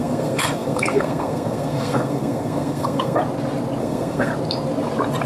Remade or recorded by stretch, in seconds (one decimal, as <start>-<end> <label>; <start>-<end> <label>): 0.0-3.2 remade; 3.2-3.8 recorded; 3.8-4.3 remade; 4.3-5.3 recorded